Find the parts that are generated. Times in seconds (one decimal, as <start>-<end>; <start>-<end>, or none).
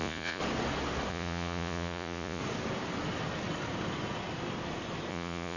0.0-0.4; 1.1-2.4; 5.1-5.6